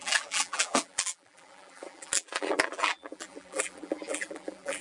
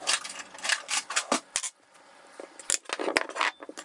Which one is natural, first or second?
second